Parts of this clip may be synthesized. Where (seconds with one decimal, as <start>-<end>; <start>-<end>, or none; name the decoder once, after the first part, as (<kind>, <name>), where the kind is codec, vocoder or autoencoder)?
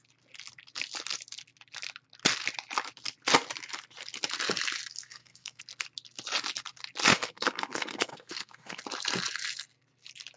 5.0-5.6 (codec, SNAC); 7.1-8.8